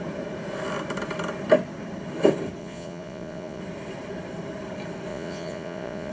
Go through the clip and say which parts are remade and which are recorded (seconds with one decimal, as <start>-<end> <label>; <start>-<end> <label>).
0.0-2.6 recorded; 2.6-3.6 remade; 3.6-5.1 recorded; 5.1-6.1 remade